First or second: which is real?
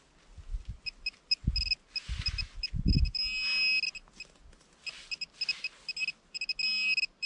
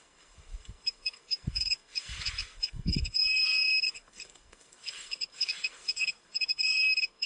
first